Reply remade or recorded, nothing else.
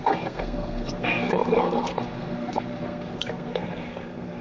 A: remade